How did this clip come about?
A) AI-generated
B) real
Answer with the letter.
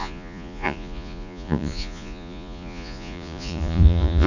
A